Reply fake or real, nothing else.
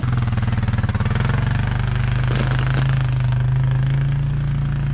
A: real